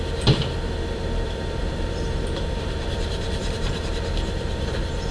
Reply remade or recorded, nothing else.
remade